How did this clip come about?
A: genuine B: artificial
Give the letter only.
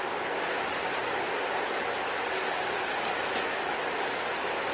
A